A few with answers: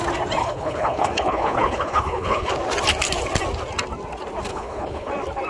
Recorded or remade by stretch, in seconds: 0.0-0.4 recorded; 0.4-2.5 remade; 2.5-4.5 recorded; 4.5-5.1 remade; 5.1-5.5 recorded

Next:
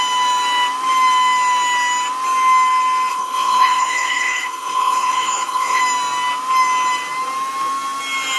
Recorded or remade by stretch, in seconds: 0.0-3.1 recorded; 3.1-5.8 remade; 5.8-8.4 recorded